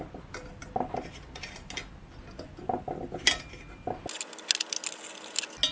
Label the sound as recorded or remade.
recorded